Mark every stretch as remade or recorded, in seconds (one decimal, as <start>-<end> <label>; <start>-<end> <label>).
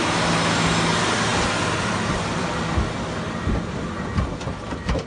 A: 0.0-5.1 recorded